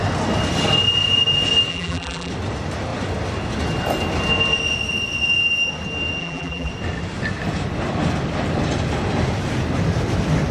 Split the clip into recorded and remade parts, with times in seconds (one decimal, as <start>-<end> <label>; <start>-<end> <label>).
0.0-1.7 recorded; 1.7-2.3 remade; 2.3-6.2 recorded; 6.2-6.7 remade; 6.7-10.5 recorded